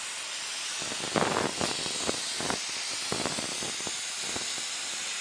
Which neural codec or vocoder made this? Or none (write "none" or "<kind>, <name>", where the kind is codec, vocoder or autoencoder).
none